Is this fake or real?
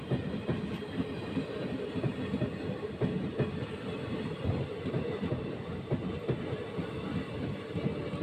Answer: real